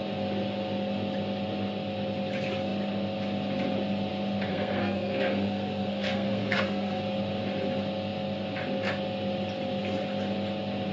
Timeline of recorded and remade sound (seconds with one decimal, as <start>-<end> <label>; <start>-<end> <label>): 0.0-4.5 recorded; 4.5-7.0 remade; 7.0-10.9 recorded